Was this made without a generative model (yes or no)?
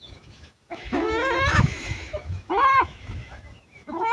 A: no